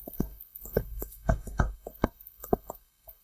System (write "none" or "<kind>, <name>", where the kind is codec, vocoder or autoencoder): codec, SNAC